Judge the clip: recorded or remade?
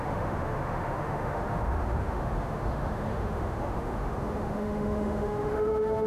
remade